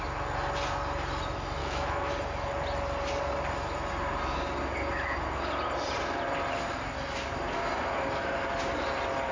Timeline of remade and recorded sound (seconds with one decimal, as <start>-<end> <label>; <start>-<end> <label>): 0.0-1.6 recorded; 1.6-2.1 remade; 2.1-9.3 recorded